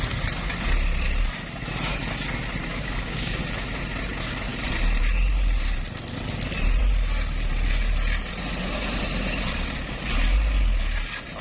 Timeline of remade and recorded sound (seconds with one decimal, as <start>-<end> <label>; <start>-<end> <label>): 0.0-2.7 recorded; 2.7-3.4 remade; 3.4-11.4 recorded